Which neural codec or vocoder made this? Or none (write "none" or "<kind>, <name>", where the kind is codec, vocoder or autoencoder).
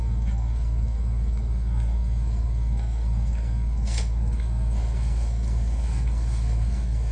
codec, SNAC